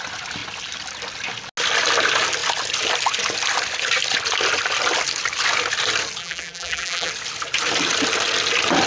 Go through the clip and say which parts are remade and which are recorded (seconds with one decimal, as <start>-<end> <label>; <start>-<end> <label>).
0.0-6.2 recorded; 6.2-7.1 remade; 7.1-8.9 recorded